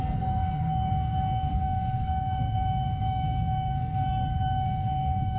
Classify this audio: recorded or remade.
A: remade